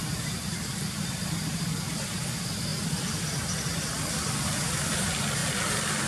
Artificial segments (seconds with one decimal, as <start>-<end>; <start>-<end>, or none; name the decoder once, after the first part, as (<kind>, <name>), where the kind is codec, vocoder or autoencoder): 0.0-2.7 (vocoder, BigVGAN v2); 3.2-5.4